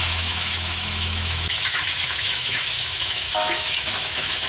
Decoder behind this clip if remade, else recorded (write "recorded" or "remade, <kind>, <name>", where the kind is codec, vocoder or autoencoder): remade, autoencoder, DAC-VAE